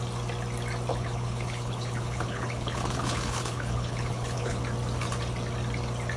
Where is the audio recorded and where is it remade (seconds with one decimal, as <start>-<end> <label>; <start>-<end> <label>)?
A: 0.0-0.9 recorded; 0.9-4.6 remade; 4.6-6.2 recorded